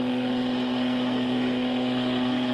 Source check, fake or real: fake